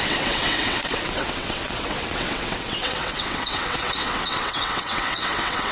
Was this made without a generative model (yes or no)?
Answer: no